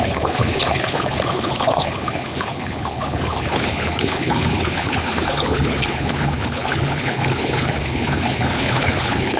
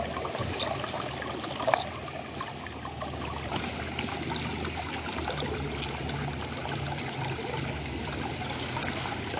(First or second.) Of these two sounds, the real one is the second